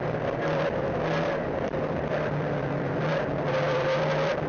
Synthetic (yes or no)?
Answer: yes